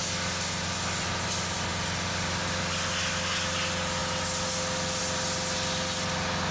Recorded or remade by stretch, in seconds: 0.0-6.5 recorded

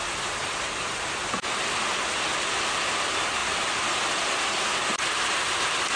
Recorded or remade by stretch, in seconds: 0.0-6.0 recorded

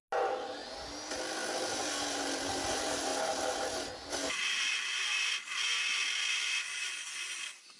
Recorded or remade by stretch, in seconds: 0.0-7.8 recorded

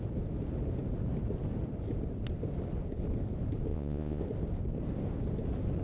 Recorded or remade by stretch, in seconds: 0.0-3.7 recorded; 3.7-4.2 remade; 4.2-5.8 recorded